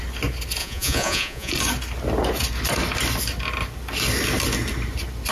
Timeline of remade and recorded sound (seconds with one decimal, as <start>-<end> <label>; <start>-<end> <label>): 0.0-0.6 recorded; 0.6-1.5 remade; 1.5-5.3 recorded